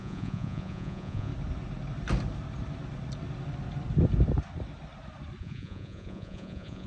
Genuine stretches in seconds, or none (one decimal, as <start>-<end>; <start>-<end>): 1.3-5.4